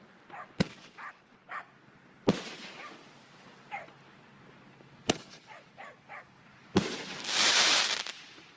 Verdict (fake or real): real